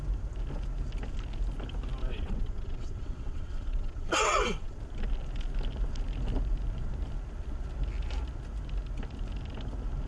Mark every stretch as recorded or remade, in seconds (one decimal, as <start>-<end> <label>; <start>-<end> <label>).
0.0-2.0 recorded; 2.0-4.8 remade; 4.8-10.1 recorded